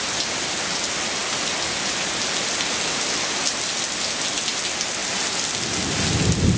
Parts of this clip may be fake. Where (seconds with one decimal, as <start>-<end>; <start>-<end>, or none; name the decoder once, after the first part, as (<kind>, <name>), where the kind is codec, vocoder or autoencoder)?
none